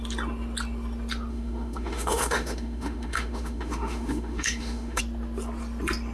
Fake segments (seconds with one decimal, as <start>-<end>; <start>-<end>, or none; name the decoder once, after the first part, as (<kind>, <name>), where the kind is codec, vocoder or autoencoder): 1.3-5.0 (autoencoder, DAC-VAE)